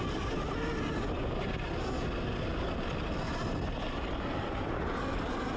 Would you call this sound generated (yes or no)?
no